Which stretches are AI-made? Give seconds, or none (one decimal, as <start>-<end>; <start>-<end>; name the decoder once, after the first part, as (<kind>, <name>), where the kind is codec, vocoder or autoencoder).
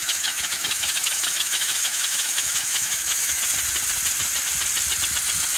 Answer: 0.0-3.4 (autoencoder, DAC-VAE)